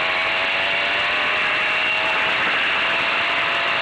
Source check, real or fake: fake